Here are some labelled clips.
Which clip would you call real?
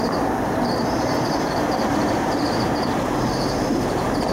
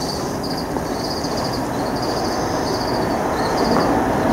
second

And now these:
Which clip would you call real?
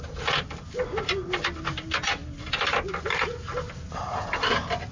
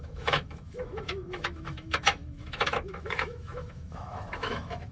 first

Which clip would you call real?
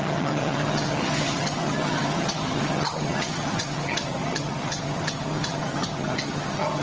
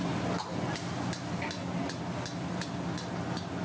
second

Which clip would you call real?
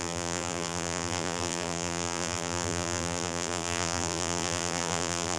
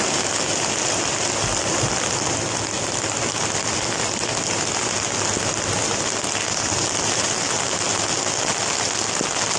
second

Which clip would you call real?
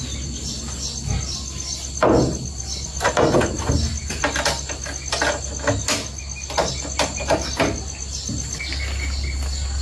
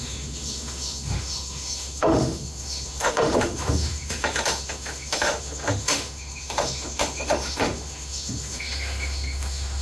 first